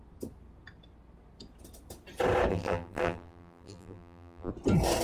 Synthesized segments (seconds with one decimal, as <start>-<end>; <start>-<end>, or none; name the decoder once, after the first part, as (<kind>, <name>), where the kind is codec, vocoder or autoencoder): 2.5-4.5 (vocoder, BigVGAN v2)